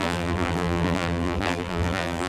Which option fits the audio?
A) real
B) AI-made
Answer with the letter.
B